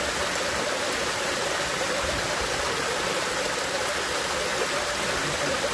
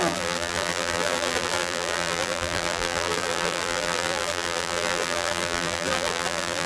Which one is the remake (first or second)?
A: second